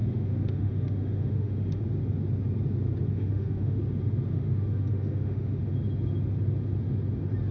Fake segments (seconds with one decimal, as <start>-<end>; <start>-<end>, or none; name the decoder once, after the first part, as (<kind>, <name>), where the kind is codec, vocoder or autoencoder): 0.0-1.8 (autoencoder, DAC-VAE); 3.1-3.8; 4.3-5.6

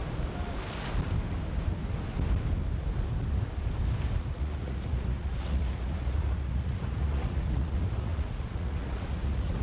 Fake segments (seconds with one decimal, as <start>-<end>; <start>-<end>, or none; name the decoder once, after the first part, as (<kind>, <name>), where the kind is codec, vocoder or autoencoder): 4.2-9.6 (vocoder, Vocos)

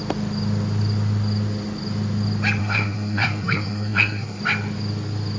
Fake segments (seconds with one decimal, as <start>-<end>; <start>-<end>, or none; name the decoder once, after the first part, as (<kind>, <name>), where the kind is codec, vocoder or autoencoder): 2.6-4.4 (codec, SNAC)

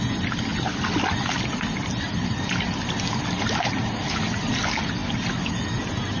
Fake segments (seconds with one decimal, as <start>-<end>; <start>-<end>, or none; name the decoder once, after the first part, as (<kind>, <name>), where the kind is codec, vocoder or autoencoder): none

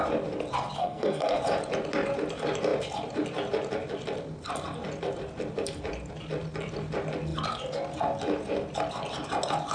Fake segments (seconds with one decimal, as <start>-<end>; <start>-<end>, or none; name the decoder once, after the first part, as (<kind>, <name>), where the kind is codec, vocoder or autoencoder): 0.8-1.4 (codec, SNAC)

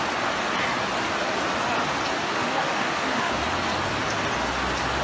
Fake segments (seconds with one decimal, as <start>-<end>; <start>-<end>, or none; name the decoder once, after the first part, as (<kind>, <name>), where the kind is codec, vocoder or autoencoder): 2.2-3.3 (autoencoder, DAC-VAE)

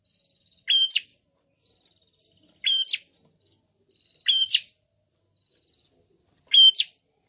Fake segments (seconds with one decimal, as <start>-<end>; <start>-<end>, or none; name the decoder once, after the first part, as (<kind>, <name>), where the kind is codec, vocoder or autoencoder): none

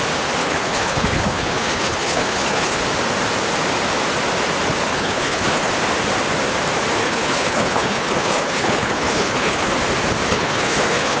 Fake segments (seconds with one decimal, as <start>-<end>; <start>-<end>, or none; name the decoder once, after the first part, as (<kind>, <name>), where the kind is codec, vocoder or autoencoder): 0.4-2.8 (codec, HILCodec); 4.9-5.7; 7.0-9.7; 10.3-11.2